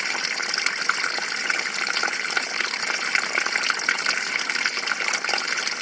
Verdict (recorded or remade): recorded